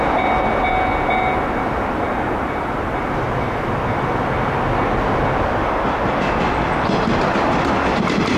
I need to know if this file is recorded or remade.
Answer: recorded